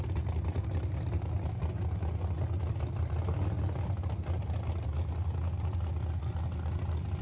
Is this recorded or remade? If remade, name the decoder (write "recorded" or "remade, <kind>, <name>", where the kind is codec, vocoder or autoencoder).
recorded